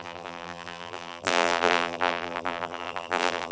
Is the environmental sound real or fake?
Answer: fake